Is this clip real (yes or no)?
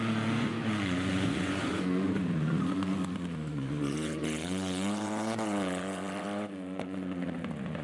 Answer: no